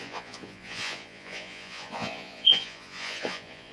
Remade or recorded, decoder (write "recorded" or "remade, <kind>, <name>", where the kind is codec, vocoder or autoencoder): remade, vocoder, Vocos